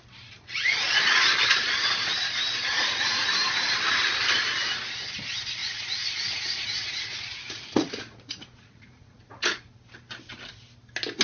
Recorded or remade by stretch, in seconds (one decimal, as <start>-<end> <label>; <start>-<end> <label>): 0.0-2.7 recorded; 2.7-3.3 remade; 3.3-5.6 recorded; 5.6-9.7 remade; 9.7-11.2 recorded